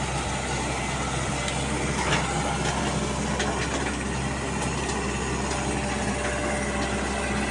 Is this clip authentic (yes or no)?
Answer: yes